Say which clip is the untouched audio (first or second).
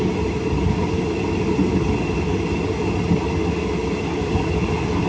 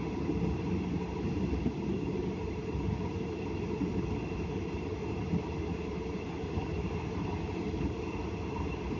first